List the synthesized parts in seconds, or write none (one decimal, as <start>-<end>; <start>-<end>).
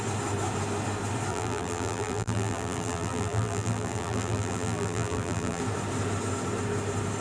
1.3-5.6